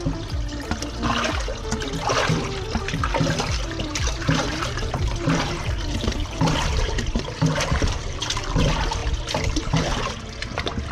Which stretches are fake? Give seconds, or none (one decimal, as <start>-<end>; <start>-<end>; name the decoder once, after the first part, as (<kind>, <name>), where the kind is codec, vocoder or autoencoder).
3.9-8.6 (vocoder, BigVGAN v2); 9.0-10.1